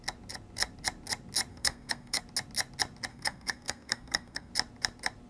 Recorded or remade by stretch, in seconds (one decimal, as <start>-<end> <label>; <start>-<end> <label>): 0.0-1.5 recorded; 1.5-2.2 remade; 2.2-3.1 recorded; 3.1-4.5 remade; 4.5-5.3 recorded